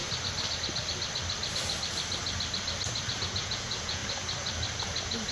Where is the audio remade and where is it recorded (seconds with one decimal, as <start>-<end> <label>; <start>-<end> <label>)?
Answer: 0.0-3.2 recorded; 3.2-4.0 remade; 4.0-5.3 recorded